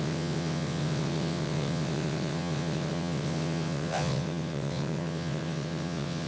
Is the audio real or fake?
fake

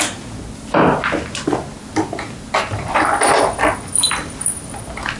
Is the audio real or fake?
real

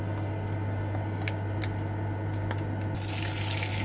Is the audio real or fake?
real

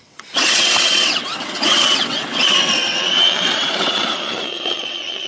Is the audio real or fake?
fake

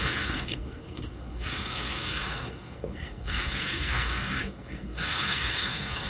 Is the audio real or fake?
fake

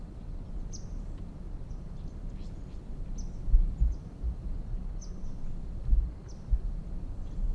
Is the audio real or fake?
real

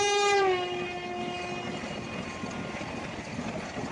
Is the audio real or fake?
real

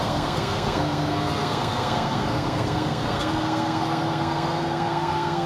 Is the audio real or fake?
fake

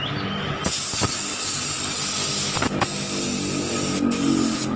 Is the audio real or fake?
real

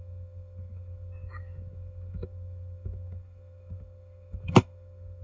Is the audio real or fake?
fake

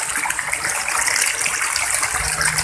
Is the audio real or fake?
real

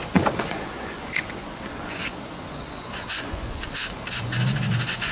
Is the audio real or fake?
fake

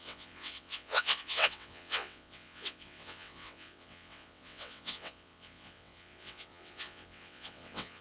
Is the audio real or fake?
fake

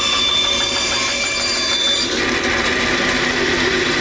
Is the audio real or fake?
real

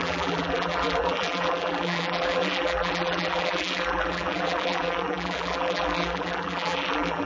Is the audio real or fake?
fake